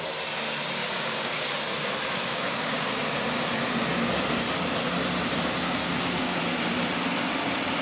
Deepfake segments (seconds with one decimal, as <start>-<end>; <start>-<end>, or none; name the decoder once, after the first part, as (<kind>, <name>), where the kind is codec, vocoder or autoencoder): 0.8-1.6 (codec, DAC); 2.3-3.2; 5.8-6.4